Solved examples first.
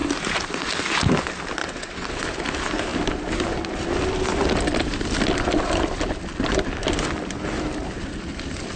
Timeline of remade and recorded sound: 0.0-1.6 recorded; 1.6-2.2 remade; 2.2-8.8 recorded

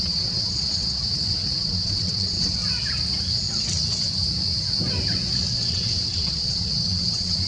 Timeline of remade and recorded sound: 0.0-2.6 remade; 2.6-5.5 recorded; 5.5-7.5 remade

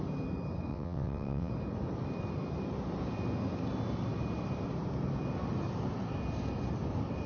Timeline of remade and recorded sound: 0.0-0.7 recorded; 0.7-1.5 remade; 1.5-7.3 recorded